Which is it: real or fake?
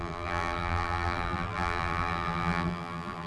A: fake